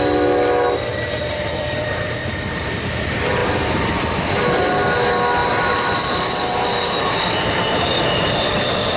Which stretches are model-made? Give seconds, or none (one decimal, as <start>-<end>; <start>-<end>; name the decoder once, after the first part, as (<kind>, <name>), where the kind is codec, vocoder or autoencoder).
0.9-2.9 (vocoder, BigVGAN v2); 3.4-4.6; 5.4-8.0